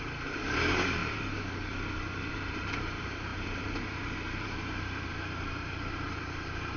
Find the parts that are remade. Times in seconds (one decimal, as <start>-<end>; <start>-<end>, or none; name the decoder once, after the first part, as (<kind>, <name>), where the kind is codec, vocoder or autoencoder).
0.0-1.0 (vocoder, BigVGAN v2); 2.3-6.8